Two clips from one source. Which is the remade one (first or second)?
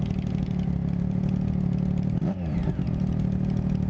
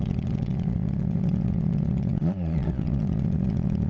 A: second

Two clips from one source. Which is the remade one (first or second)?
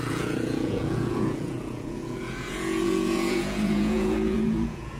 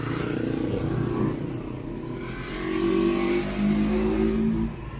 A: first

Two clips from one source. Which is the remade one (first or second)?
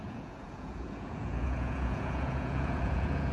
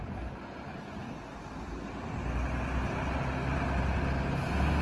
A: first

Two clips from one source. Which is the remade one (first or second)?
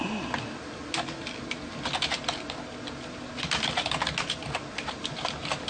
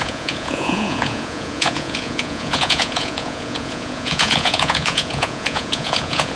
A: second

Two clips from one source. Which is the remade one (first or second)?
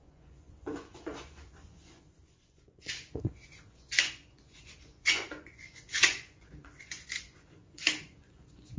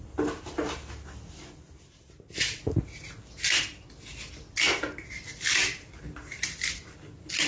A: first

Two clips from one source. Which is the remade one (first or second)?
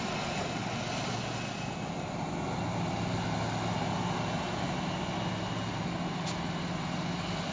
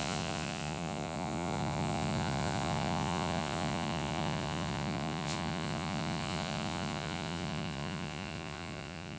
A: second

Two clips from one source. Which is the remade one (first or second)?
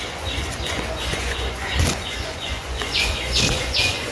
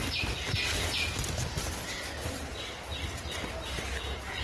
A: first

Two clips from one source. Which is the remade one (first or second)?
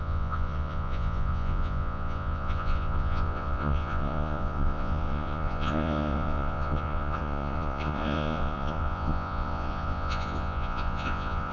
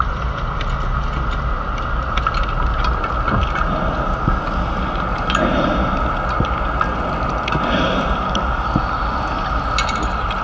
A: first